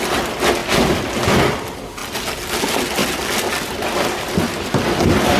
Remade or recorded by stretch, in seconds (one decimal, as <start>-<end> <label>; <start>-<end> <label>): 0.0-3.0 recorded; 3.0-4.8 remade; 4.8-5.4 recorded